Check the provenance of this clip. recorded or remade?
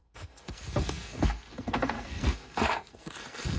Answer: remade